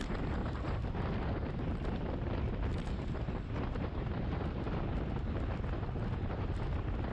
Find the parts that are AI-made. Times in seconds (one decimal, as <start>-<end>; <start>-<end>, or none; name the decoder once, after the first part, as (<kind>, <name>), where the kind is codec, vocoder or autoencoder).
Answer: 0.4-2.0 (vocoder, BigVGAN v2)

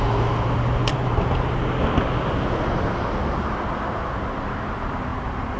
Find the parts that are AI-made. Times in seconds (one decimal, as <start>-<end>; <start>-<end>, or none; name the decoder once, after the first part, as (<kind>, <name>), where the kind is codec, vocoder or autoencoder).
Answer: 0.9-1.6 (vocoder, BigVGAN v2); 5.1-5.6